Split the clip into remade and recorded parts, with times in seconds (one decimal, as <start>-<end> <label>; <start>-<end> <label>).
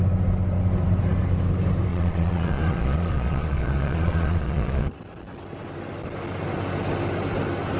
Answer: 0.0-1.9 recorded; 1.9-4.9 remade; 4.9-7.8 recorded